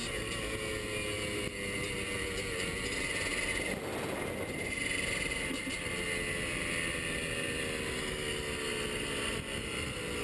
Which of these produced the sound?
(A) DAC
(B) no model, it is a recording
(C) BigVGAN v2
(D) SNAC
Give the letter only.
B